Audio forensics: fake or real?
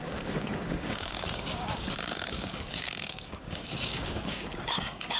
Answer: fake